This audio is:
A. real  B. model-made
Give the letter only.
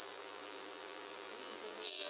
B